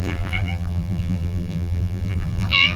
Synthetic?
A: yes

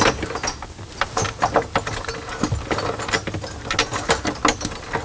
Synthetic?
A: no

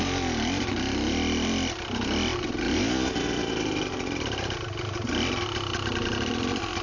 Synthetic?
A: no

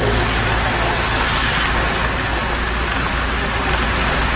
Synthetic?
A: no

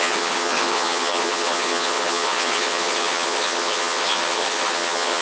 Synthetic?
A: yes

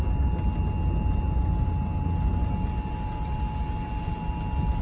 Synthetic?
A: no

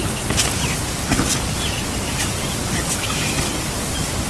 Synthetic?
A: no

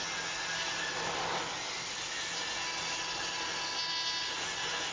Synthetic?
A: no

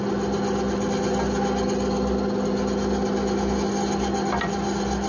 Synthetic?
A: no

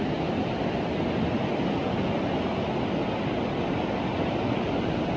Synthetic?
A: no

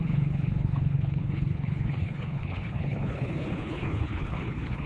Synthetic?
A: yes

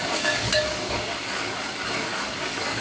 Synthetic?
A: yes